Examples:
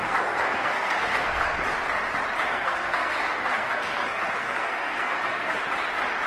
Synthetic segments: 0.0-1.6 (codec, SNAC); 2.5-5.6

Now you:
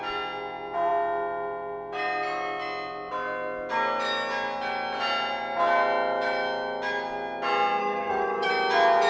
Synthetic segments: 7.8-8.5 (codec, DAC)

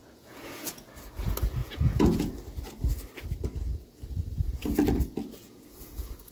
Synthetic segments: 0.0-0.9 (vocoder, Vocos); 1.6-2.3; 5.4-6.3

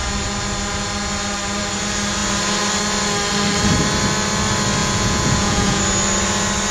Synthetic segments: 4.8-5.8 (vocoder, Vocos)

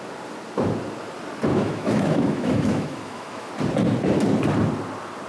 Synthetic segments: 1.5-3.5 (autoencoder, DAC-VAE)